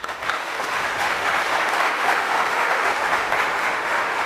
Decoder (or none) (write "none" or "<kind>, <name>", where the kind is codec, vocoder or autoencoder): autoencoder, DAC-VAE